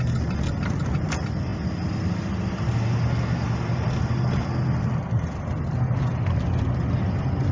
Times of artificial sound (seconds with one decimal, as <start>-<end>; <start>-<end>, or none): none